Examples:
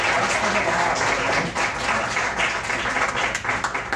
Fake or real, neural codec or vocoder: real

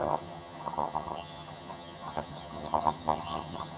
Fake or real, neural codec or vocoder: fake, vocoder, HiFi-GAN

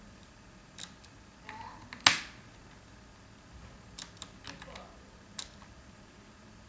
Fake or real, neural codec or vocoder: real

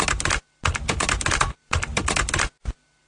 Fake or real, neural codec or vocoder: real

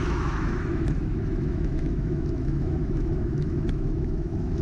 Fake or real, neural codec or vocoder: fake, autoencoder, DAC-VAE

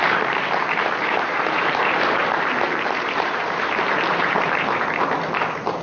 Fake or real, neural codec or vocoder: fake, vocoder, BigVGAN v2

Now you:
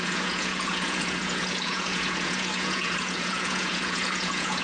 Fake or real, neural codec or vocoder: fake, vocoder, Vocos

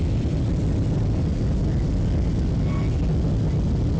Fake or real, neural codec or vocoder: real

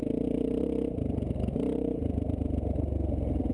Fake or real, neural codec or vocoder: real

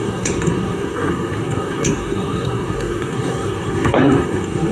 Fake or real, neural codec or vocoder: fake, codec, SNAC